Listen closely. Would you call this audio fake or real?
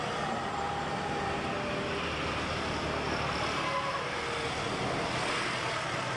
real